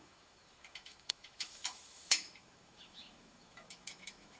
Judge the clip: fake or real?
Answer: fake